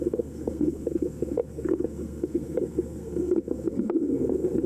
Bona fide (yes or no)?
no